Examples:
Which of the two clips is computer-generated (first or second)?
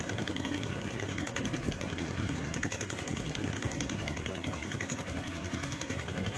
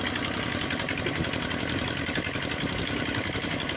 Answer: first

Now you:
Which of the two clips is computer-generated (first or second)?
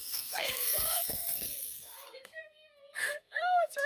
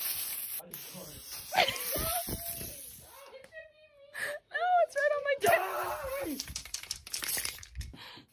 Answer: first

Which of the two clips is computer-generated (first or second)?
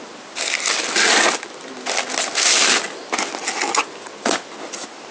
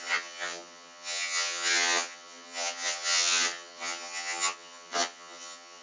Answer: second